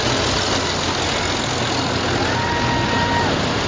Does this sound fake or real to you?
real